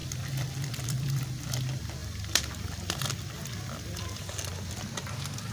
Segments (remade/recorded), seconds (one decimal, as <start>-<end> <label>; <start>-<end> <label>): 0.0-1.2 remade; 1.2-2.0 recorded; 2.0-4.7 remade; 4.7-5.5 recorded